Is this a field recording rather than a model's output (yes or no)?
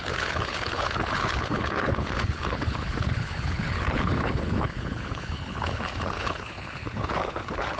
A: no